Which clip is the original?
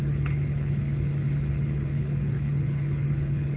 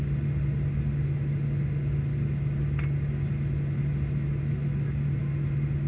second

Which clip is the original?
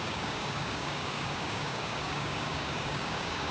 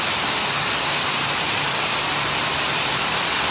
second